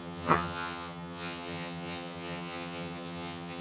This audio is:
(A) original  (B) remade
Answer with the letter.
B